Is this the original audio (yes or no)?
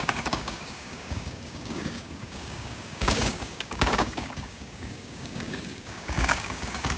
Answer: no